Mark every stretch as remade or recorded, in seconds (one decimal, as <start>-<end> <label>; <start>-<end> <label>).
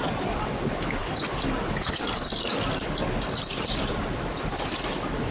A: 0.0-5.3 recorded